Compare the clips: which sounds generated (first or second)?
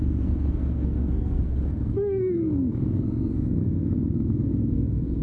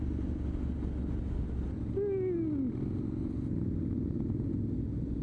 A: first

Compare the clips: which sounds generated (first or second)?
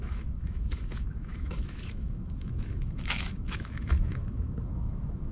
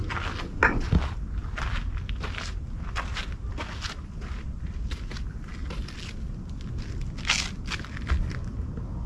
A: first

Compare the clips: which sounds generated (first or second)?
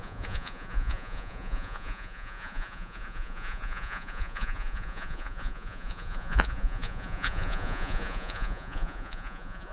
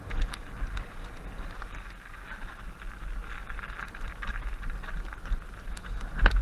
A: first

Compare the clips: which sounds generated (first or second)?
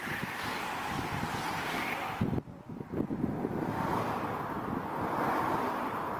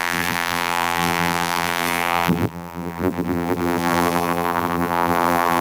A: second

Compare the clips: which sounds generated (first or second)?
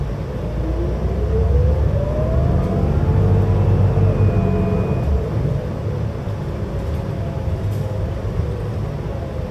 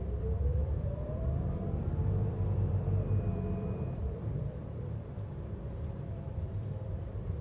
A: second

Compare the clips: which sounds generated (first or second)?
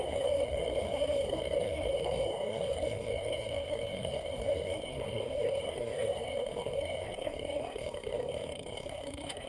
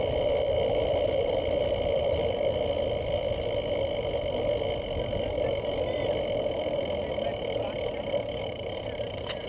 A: first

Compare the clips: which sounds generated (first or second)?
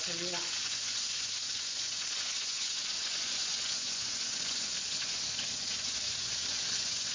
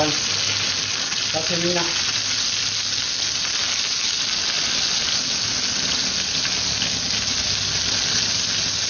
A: first